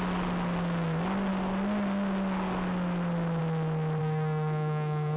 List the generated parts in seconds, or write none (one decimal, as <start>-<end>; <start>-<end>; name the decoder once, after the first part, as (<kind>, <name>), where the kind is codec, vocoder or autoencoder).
4.0-5.2 (codec, SNAC)